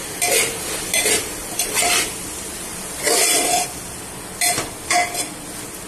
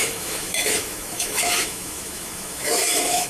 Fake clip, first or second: second